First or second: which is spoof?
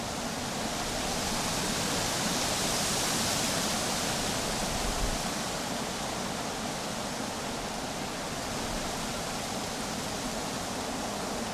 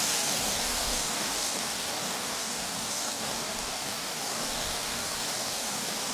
second